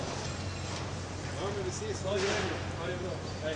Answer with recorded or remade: recorded